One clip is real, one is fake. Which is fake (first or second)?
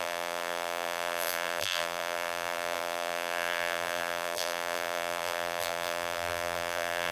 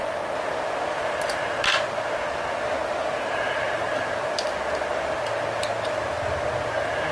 first